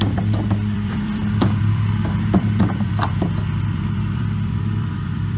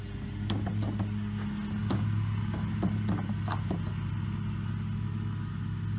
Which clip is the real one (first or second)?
second